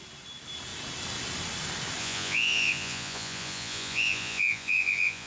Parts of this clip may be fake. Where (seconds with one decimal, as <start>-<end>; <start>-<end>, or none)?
2.0-5.3